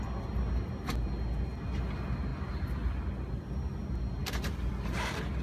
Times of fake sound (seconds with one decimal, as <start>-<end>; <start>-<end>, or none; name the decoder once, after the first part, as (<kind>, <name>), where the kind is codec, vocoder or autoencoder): none